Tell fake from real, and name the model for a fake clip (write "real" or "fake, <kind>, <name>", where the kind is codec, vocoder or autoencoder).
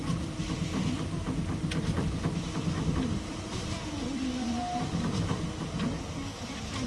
real